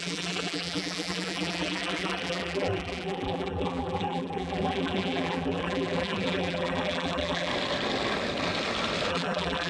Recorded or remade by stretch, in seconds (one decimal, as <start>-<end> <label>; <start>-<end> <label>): 0.0-7.5 remade; 7.5-9.1 recorded; 9.1-9.7 remade